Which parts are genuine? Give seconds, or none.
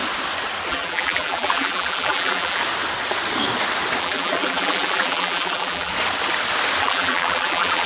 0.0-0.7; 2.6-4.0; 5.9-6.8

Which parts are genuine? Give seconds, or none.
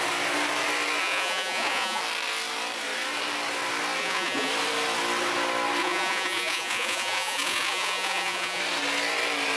0.0-1.0; 2.0-4.0; 4.5-5.8; 8.6-9.6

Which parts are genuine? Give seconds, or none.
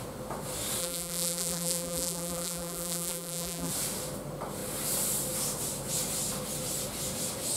0.0-0.8; 3.7-7.6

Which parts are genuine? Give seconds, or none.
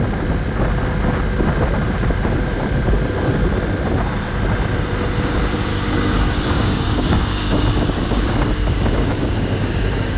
0.0-5.7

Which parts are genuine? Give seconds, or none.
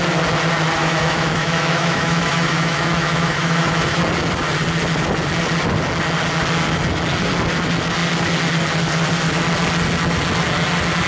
0.0-0.8; 4.0-11.1